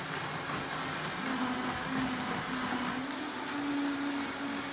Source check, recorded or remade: recorded